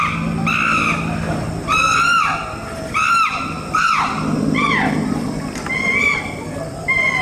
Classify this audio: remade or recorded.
recorded